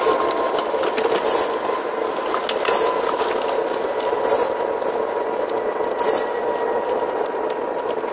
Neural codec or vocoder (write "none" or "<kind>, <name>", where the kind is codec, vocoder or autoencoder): none